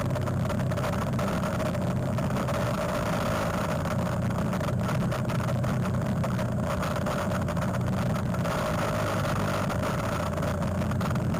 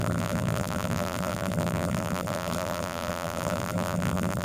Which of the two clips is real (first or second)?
first